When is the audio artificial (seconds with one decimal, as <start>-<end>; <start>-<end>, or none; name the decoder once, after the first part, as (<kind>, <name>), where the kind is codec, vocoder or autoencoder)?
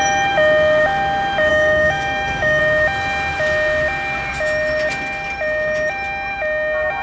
1.5-2.6 (codec, DAC)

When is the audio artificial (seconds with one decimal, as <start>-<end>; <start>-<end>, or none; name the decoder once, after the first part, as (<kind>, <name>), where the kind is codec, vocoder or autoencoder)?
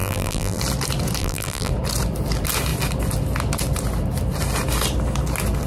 0.0-0.6 (vocoder, BigVGAN v2); 1.2-1.7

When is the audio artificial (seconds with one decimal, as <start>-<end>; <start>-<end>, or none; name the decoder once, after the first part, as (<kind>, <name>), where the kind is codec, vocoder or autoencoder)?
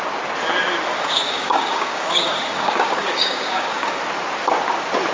0.9-4.0 (codec, DAC)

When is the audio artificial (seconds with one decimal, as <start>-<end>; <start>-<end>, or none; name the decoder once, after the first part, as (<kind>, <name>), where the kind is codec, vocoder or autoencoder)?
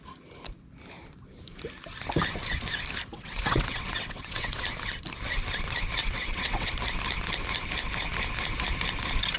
3.1-4.6 (vocoder, WaveNeXt); 6.0-6.7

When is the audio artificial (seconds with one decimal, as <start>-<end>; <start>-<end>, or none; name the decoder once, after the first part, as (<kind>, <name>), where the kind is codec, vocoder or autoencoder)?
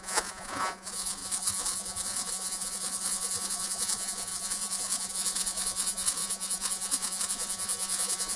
0.0-8.4 (vocoder, Vocos)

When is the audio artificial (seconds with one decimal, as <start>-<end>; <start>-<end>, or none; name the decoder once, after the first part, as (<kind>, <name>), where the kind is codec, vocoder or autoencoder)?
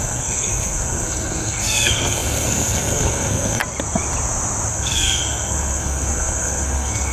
0.0-3.6 (codec, SNAC); 4.7-7.1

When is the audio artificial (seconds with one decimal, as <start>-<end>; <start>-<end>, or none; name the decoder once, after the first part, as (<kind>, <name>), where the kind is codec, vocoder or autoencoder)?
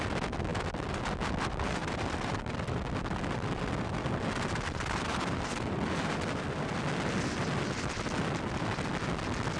0.5-1.0 (vocoder, BigVGAN v2); 1.8-6.4